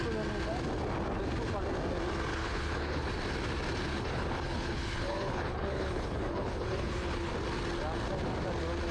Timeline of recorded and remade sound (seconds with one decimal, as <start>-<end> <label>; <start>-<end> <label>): 0.0-2.3 recorded; 2.3-3.1 remade; 3.1-3.9 recorded; 3.9-7.3 remade; 7.3-8.9 recorded